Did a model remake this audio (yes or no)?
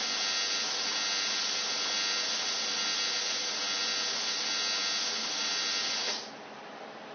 no